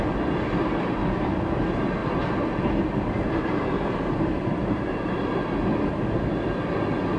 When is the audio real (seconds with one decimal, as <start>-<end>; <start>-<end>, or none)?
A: 0.0-2.0; 5.2-7.2